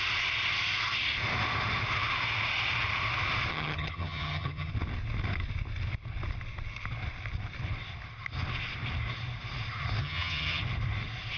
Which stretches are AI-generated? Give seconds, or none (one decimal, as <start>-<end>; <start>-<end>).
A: 3.5-4.7; 10.0-10.6